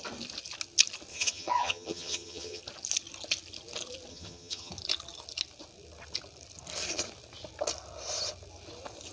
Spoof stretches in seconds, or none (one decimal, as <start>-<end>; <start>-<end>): 1.1-2.6; 4.1-4.7